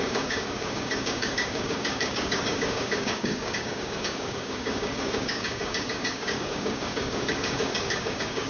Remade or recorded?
remade